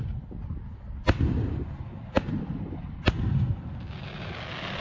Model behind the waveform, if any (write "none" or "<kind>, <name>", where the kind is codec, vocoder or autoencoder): none